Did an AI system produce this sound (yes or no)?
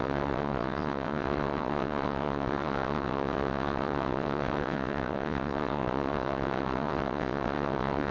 yes